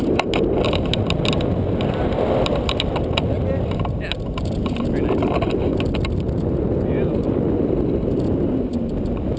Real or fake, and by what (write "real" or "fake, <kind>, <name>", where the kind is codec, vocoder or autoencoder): real